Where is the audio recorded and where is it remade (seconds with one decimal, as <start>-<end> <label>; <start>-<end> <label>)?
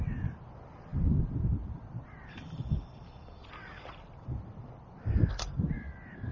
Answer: 0.0-0.9 recorded; 0.9-1.4 remade; 1.4-6.3 recorded